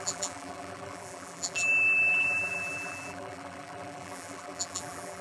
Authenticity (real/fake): fake